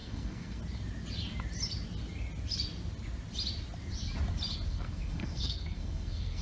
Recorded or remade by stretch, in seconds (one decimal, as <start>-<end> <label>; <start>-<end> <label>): 0.0-0.6 remade; 0.6-4.7 recorded; 4.7-6.4 remade